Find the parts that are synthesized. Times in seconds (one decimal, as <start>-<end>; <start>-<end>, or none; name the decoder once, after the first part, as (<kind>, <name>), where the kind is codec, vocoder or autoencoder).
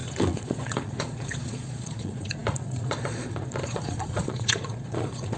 0.0-5.4 (vocoder, Vocos)